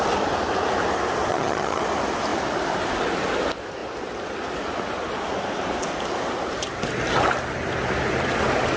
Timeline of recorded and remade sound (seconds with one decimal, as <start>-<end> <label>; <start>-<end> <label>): 0.0-1.3 recorded; 1.3-1.8 remade; 1.8-8.8 recorded